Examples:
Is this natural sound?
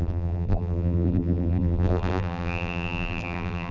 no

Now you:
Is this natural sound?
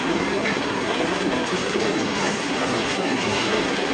no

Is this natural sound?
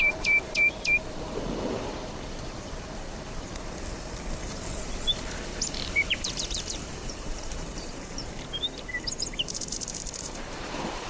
no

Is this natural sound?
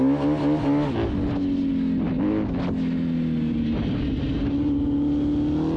yes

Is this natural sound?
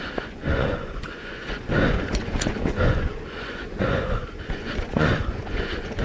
no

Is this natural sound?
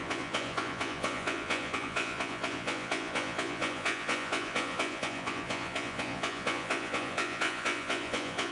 no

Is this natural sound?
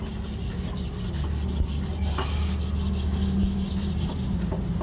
yes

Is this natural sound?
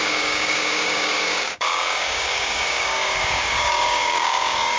no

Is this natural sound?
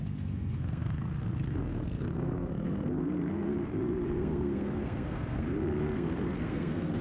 no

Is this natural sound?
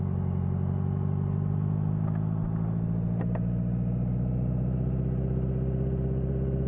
yes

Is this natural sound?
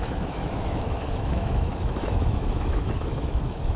no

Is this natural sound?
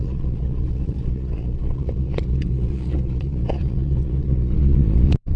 no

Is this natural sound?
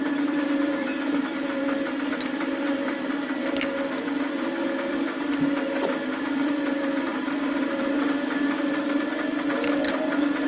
no